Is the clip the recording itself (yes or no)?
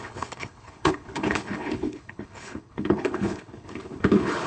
no